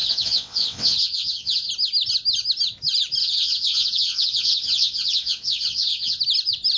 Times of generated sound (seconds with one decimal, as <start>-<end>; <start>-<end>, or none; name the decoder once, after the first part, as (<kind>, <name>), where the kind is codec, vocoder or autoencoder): 0.0-1.7 (vocoder, WaveNeXt); 3.2-6.2